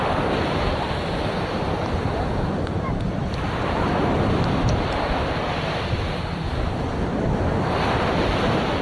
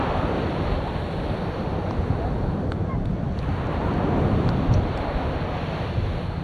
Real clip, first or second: second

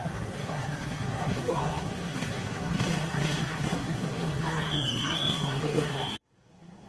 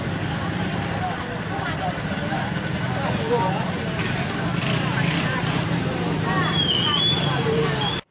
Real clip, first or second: second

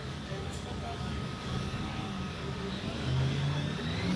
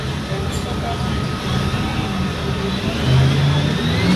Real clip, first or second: second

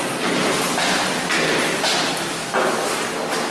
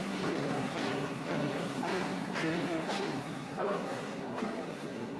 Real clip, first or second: first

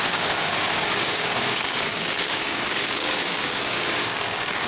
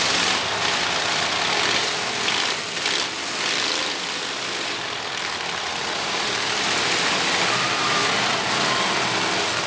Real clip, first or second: second